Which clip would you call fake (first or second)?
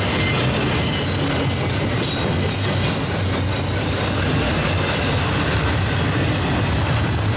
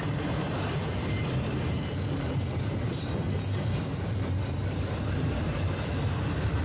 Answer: second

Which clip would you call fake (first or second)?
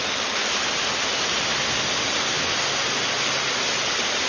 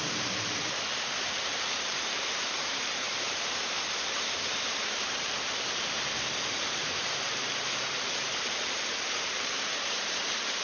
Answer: second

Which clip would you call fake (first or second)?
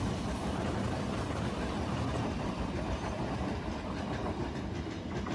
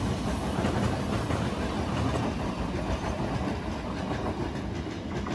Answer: first